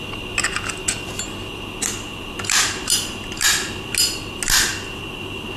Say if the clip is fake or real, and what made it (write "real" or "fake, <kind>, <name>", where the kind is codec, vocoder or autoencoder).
real